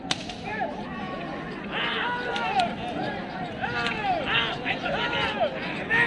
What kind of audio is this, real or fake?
real